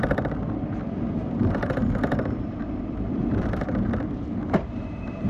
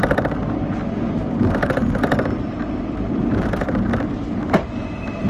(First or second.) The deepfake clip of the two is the first